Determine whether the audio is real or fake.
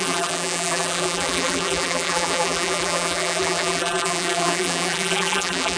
fake